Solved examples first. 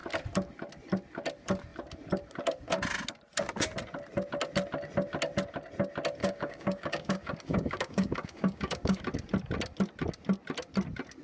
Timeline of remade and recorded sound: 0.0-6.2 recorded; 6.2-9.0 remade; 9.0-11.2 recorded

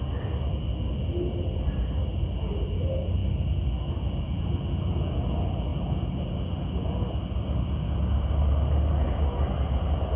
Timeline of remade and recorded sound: 0.0-10.2 recorded

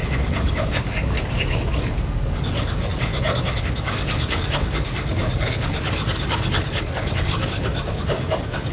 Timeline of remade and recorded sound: 0.0-3.1 remade; 3.1-3.6 recorded; 3.6-8.7 remade